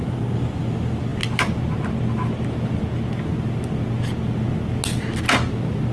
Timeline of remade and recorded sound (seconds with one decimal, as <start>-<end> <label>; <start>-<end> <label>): 0.0-5.9 recorded